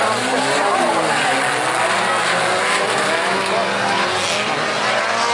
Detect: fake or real real